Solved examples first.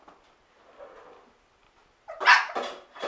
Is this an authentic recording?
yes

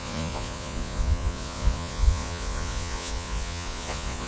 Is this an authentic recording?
no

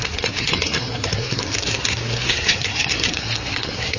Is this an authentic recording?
no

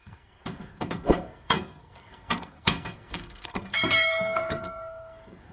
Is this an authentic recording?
no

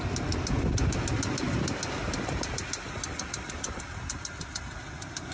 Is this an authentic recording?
yes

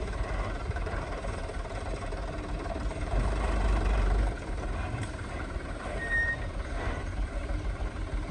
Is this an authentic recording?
no